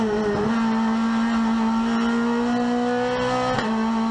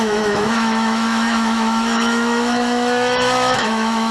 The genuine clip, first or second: first